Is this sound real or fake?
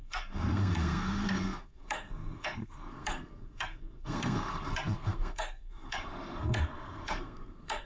fake